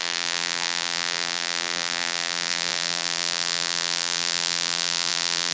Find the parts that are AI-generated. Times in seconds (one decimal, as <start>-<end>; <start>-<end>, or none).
0.0-5.5